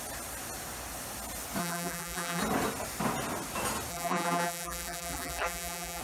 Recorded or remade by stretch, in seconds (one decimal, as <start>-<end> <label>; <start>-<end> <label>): 0.0-1.6 recorded; 1.6-2.4 remade; 2.4-3.9 recorded; 3.9-6.0 remade